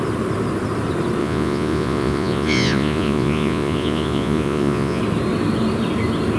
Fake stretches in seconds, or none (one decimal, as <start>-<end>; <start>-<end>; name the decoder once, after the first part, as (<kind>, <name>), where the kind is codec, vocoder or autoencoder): 1.2-5.0 (vocoder, Vocos)